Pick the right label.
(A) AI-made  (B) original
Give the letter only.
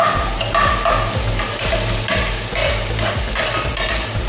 B